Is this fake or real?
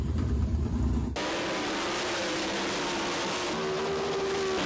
real